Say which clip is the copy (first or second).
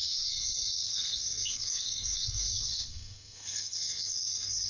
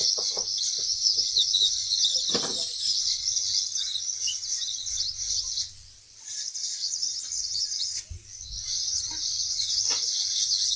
first